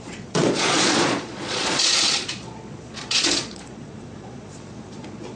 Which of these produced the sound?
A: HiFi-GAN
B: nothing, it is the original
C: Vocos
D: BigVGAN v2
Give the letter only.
C